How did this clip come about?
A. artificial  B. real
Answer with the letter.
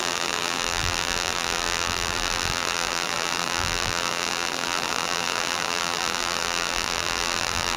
A